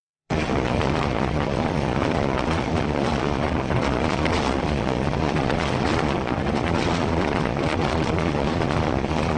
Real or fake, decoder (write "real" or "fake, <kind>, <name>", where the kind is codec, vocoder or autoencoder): fake, vocoder, Vocos